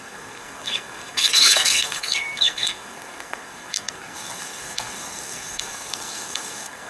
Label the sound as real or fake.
fake